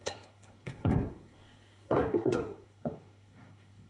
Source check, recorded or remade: remade